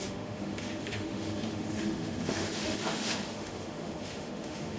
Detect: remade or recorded remade